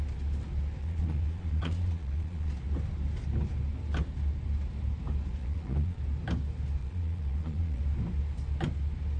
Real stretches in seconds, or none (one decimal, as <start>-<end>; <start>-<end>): 0.0-0.8; 2.5-5.4; 6.0-6.8; 7.8-9.2